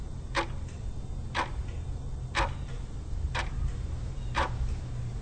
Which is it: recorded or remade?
recorded